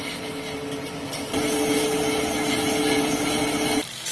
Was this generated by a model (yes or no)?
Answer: no